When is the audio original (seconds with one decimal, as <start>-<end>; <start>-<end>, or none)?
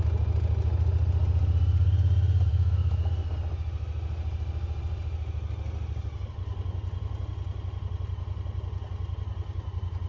0.0-2.5; 3.1-10.1